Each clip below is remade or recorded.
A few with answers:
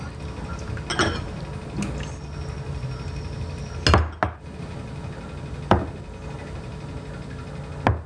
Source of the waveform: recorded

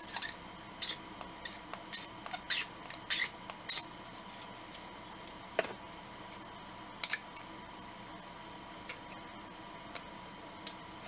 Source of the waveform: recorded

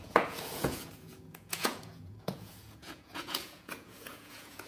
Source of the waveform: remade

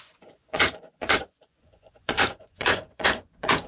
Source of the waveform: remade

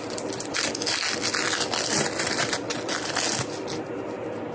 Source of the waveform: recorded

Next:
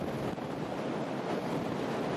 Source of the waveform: recorded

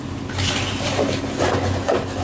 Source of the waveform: recorded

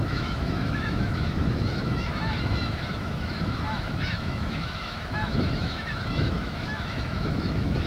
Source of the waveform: remade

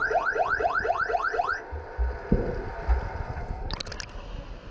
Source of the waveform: recorded